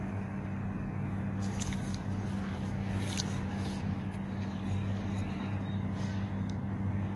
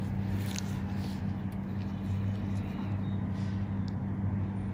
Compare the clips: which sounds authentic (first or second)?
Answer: second